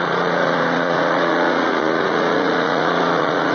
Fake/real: fake